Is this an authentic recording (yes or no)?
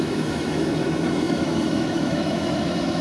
no